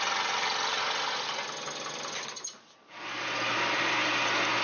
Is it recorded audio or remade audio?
recorded